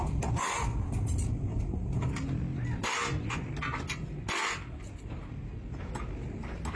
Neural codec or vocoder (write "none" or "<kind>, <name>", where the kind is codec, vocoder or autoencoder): none